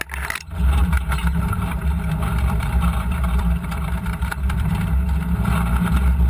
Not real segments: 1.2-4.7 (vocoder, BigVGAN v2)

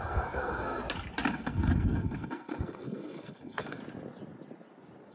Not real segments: 0.0-0.8 (codec, SNAC); 1.3-3.8

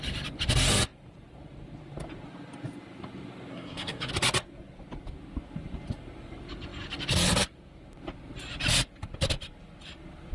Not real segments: 3.5-4.1 (codec, SNAC)

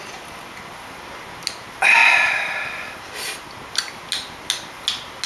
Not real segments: none